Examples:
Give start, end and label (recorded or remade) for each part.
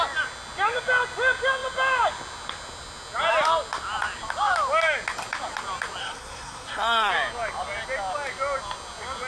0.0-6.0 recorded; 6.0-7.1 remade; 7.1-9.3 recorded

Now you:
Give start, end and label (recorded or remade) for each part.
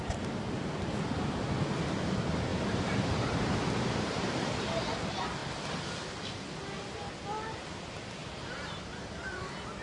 0.0-2.5 recorded; 2.5-4.5 remade; 4.5-8.2 recorded; 8.2-9.4 remade; 9.4-9.8 recorded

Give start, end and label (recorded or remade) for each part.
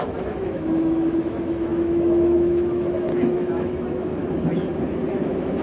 0.0-4.2 remade; 4.2-5.1 recorded; 5.1-5.6 remade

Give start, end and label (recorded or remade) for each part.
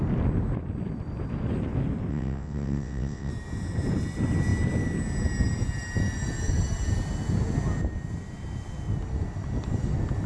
0.0-2.1 recorded; 2.1-3.3 remade; 3.3-10.3 recorded